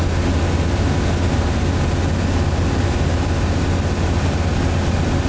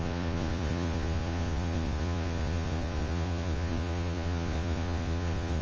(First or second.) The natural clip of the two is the first